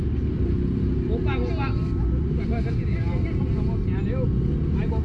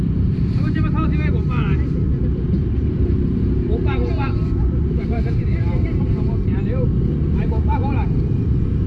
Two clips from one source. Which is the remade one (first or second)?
second